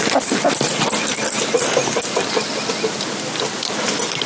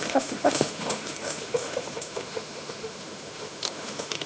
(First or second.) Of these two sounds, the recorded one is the first